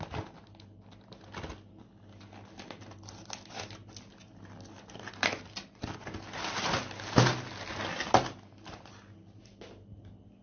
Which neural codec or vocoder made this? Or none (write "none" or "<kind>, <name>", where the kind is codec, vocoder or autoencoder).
none